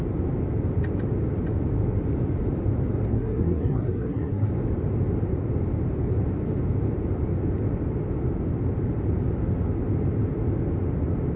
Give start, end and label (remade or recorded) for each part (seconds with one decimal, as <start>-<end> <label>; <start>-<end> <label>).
0.0-3.1 recorded; 3.1-4.5 remade; 4.5-11.4 recorded